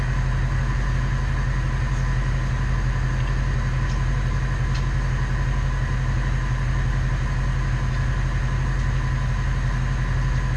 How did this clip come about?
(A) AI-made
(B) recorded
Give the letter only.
B